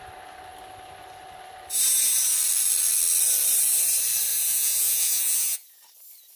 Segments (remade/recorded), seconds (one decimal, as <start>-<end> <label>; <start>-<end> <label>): 0.0-4.3 recorded; 4.3-5.8 remade; 5.8-6.4 recorded